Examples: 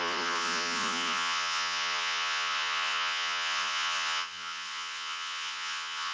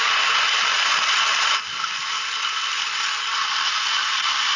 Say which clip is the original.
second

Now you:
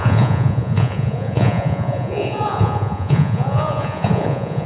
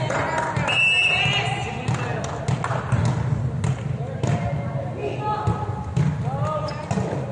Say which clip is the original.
second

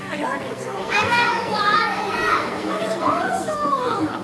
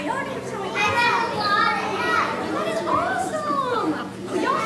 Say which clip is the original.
second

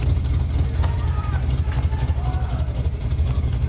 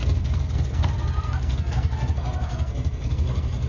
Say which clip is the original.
first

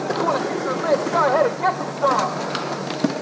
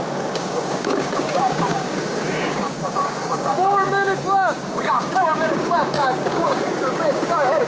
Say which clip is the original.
first